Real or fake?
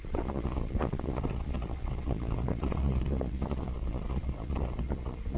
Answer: fake